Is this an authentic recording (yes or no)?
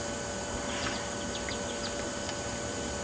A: yes